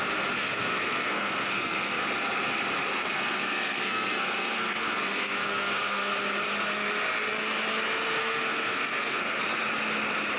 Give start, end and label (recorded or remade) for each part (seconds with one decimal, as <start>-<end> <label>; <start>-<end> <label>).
0.0-0.4 recorded; 0.4-1.9 remade; 1.9-2.9 recorded; 2.9-6.1 remade; 6.1-8.2 recorded; 8.2-9.4 remade; 9.4-10.4 recorded